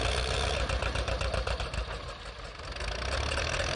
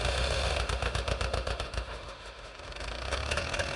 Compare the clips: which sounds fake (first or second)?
second